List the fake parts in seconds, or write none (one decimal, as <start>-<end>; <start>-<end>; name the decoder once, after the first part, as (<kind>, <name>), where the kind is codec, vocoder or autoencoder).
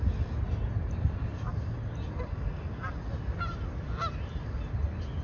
none